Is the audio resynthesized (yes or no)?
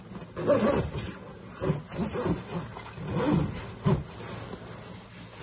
no